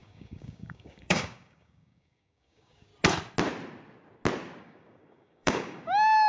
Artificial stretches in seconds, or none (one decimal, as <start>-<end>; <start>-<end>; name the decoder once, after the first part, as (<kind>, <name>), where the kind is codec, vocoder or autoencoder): 0.0-2.9 (codec, DAC); 4.6-6.3